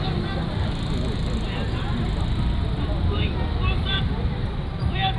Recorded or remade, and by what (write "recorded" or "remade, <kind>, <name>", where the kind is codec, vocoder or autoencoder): recorded